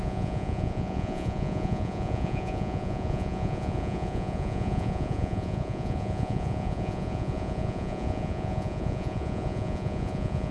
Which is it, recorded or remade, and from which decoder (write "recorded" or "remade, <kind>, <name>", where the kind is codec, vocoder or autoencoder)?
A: remade, vocoder, Vocos